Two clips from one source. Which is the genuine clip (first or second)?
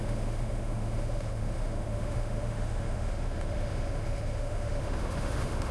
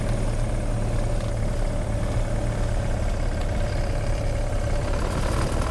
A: second